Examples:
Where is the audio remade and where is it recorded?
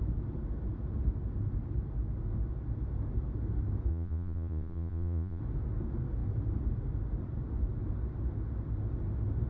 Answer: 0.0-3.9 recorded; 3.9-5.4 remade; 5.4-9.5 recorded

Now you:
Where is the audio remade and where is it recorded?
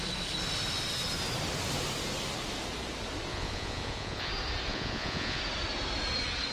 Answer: 0.0-3.3 recorded; 3.3-4.3 remade; 4.3-4.7 recorded; 4.7-5.4 remade; 5.4-6.5 recorded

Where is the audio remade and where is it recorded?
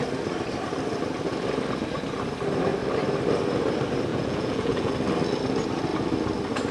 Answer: 0.0-4.1 recorded; 4.1-4.9 remade; 4.9-6.7 recorded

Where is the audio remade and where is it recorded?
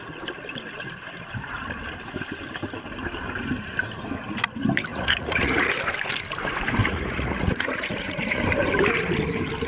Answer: 0.0-4.9 recorded; 4.9-5.7 remade; 5.7-6.8 recorded; 6.8-8.4 remade; 8.4-9.7 recorded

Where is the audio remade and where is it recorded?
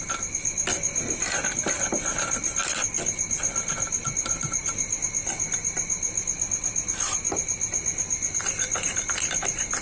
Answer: 0.0-9.8 recorded